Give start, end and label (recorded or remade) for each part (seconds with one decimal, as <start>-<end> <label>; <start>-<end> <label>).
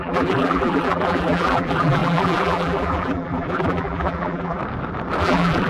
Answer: 0.0-4.6 remade; 4.6-5.2 recorded; 5.2-5.7 remade